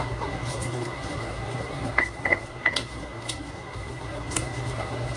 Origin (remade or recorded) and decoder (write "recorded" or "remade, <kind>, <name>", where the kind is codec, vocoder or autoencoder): remade, codec, SNAC